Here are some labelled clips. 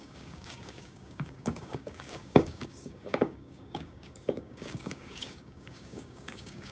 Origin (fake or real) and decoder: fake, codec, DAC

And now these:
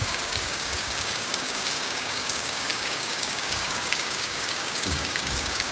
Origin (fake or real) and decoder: fake, codec, DAC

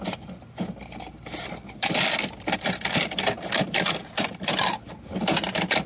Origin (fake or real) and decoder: real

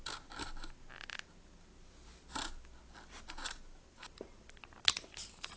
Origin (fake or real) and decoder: real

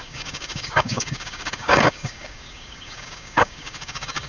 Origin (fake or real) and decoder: fake, codec, DAC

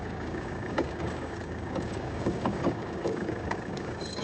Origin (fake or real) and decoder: fake, codec, DAC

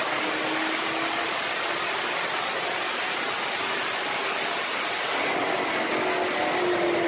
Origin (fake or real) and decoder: real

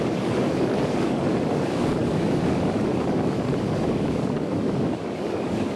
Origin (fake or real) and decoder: fake, codec, DAC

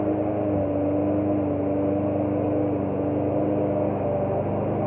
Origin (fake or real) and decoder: real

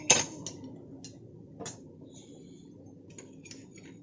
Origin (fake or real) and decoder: real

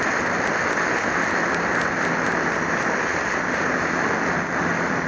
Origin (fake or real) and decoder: real